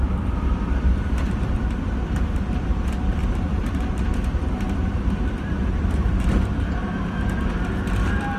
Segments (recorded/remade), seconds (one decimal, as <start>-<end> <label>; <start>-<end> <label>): 0.0-3.2 remade; 3.2-4.5 recorded; 4.5-8.4 remade